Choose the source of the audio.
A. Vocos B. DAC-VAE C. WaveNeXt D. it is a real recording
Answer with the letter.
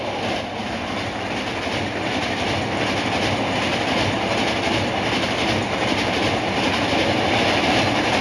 D